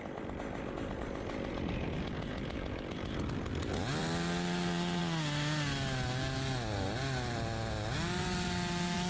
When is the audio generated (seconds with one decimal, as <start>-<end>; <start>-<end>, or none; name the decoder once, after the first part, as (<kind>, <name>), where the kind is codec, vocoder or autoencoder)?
none